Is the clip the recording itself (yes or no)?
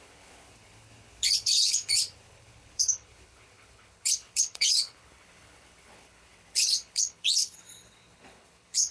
no